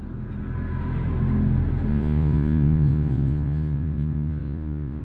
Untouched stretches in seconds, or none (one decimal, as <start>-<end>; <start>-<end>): 0.0-1.9